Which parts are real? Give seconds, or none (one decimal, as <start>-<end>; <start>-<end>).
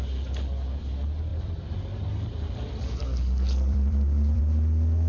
0.0-1.3; 4.4-5.1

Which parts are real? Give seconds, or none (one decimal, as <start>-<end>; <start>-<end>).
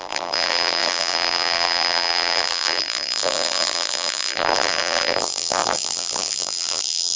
none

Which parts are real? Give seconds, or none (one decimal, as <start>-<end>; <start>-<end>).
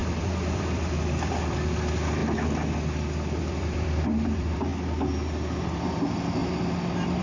2.2-3.4; 4.7-5.6; 6.4-7.2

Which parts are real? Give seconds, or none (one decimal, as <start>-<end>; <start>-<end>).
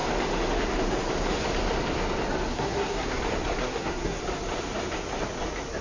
0.0-2.5; 3.2-3.6; 4.2-5.8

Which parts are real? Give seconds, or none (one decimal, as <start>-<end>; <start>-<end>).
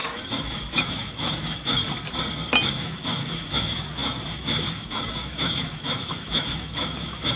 1.8-2.7